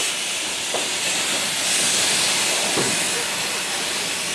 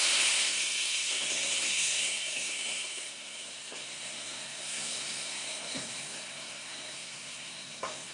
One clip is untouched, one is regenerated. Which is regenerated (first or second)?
second